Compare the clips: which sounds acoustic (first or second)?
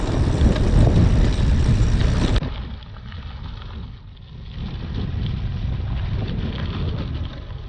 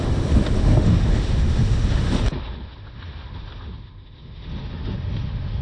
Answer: first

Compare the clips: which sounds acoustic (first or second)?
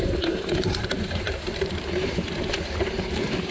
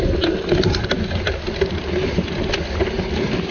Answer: second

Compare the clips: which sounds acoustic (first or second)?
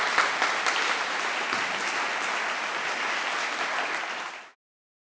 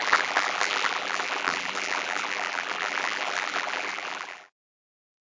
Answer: first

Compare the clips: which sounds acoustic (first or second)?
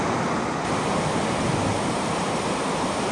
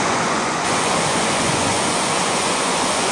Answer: first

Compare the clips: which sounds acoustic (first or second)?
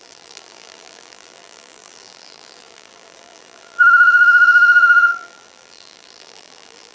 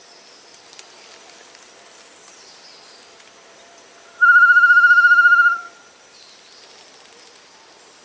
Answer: second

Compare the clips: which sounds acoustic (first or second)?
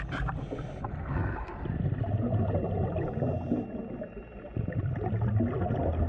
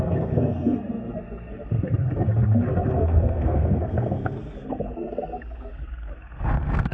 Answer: first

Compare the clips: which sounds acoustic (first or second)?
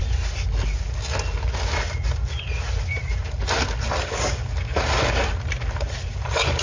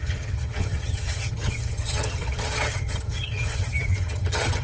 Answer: first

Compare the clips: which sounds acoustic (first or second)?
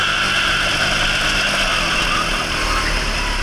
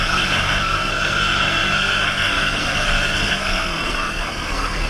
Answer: first